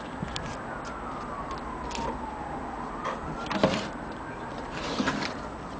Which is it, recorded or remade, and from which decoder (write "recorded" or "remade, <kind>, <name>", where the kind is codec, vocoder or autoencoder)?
recorded